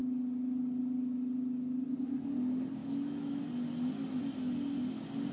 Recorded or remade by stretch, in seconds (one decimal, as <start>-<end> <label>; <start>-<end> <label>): 0.0-2.8 recorded; 2.8-3.4 remade; 3.4-5.3 recorded